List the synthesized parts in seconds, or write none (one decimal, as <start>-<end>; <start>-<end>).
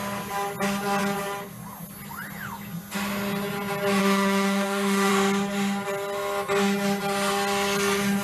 4.0-5.1